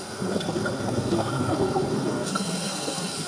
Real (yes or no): no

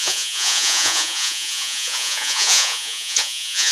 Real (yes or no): no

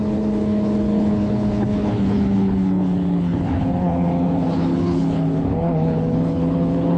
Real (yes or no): no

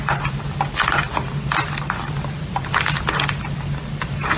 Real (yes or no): yes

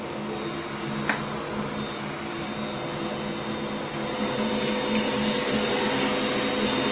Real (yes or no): yes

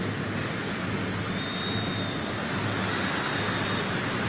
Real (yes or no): yes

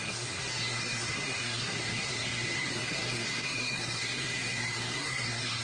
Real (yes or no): no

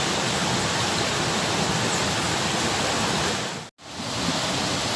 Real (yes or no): yes